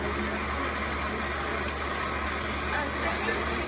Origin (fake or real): real